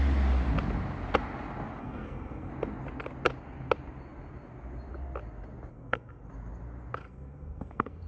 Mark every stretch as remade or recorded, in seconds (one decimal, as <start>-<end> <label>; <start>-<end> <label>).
0.0-1.8 recorded; 1.8-2.5 remade; 2.5-5.7 recorded; 5.7-6.3 remade; 6.3-7.0 recorded; 7.0-8.1 remade

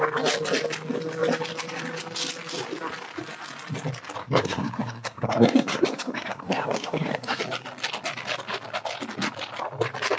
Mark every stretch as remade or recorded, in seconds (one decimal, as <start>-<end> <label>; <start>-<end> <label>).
0.0-4.2 recorded; 4.2-7.4 remade; 7.4-10.2 recorded

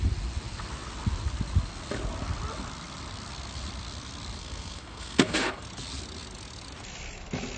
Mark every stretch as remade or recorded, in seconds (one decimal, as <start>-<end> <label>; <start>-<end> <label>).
0.0-4.4 recorded; 4.4-5.6 remade; 5.6-7.6 recorded

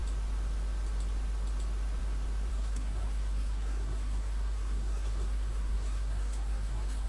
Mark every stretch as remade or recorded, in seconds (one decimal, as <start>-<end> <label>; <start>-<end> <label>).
0.0-2.5 recorded; 2.5-7.1 remade